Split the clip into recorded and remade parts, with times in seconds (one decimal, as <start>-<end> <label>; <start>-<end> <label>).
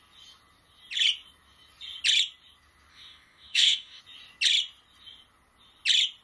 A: 0.0-2.9 recorded; 2.9-4.0 remade; 4.0-6.2 recorded